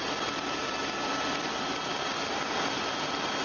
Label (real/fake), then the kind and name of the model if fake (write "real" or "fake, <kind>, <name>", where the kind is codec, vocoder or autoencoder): real